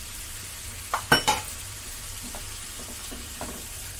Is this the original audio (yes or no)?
no